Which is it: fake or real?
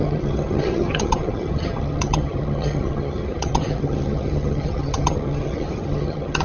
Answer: fake